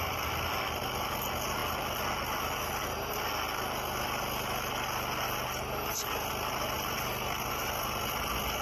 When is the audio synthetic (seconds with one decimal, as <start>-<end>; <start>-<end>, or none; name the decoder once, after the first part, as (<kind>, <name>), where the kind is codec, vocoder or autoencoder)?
none